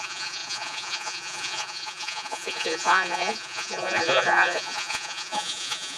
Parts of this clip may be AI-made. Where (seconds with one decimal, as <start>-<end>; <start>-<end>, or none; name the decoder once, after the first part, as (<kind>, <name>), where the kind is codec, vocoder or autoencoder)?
0.0-6.0 (vocoder, Vocos)

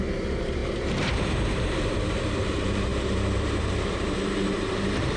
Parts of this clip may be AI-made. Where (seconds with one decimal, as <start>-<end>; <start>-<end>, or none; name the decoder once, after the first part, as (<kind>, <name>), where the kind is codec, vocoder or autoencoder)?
0.0-5.2 (vocoder, BigVGAN v2)

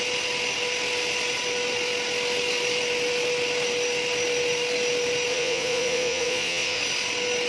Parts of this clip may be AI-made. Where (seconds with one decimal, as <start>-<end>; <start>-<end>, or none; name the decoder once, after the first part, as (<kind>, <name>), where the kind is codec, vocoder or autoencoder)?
5.3-6.8 (vocoder, Vocos)